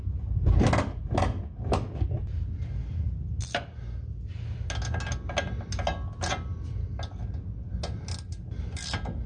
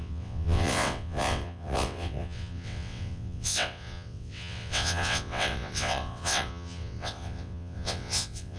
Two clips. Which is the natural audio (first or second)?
first